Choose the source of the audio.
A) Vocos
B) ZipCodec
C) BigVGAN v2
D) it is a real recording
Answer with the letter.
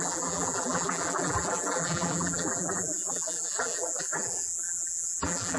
C